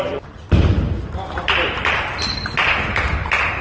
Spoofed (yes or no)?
no